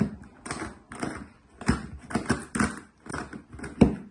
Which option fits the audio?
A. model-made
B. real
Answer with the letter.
B